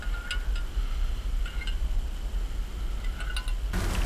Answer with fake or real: real